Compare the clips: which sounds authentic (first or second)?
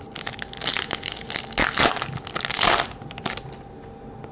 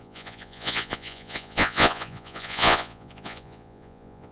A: first